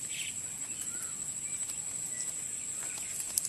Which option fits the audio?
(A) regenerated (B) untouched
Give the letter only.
B